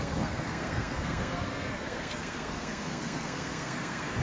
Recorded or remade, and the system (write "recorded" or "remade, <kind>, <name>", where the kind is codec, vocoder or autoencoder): remade, codec, SNAC